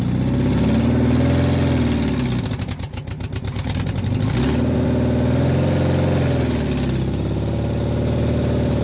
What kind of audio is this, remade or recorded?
recorded